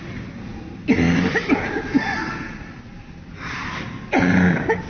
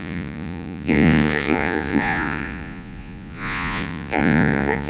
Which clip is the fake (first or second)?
second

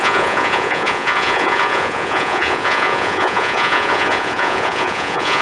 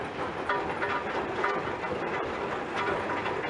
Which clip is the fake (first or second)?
first